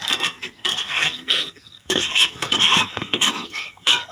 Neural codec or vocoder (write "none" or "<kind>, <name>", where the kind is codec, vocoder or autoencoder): codec, SNAC